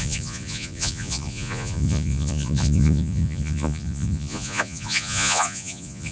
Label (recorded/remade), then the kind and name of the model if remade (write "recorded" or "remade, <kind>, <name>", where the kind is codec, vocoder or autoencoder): remade, vocoder, Vocos